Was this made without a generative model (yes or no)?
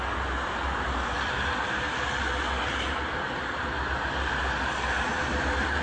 yes